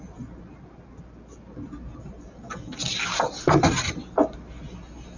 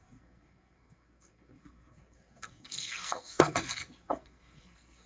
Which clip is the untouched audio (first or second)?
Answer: first